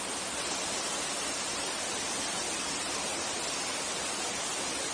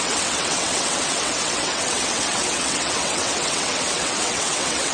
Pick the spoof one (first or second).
second